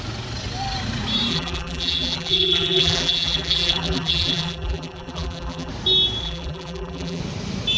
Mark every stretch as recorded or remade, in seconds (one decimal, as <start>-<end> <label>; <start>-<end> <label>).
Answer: 0.0-1.3 recorded; 1.3-5.7 remade; 5.7-6.2 recorded; 6.2-7.2 remade; 7.2-7.8 recorded